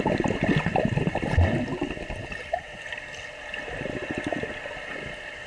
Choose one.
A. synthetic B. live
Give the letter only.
B